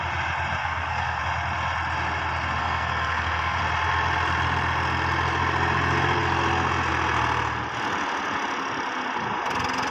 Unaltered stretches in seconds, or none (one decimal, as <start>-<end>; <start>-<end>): 0.0-0.6; 1.2-2.6; 3.6-9.9